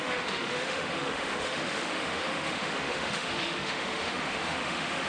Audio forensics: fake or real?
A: fake